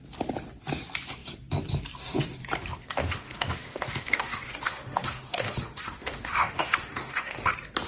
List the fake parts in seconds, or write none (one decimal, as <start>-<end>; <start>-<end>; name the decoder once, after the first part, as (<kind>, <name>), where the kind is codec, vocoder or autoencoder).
3.0-7.5 (autoencoder, DAC-VAE)